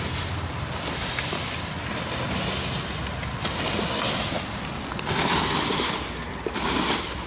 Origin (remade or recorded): recorded